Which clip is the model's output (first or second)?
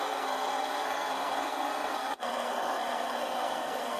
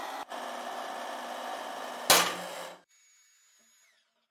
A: first